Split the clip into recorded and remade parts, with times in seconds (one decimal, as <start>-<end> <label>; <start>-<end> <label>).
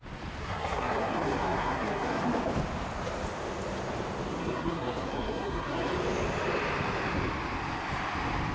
0.0-0.4 recorded; 0.4-2.2 remade; 2.2-4.4 recorded; 4.4-5.9 remade; 5.9-8.5 recorded